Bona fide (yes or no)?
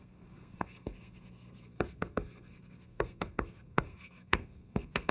no